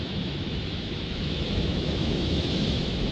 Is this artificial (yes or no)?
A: yes